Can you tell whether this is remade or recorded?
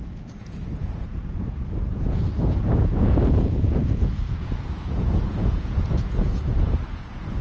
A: remade